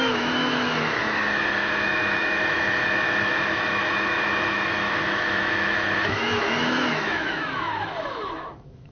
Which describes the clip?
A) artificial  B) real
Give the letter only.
A